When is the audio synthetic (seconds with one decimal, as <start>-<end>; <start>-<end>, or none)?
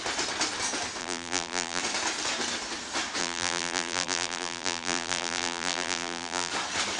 1.0-1.8; 3.2-6.5